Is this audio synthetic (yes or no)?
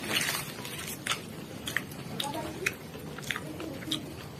no